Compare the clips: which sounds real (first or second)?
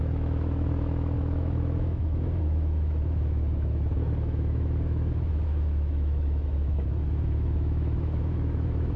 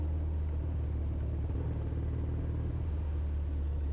second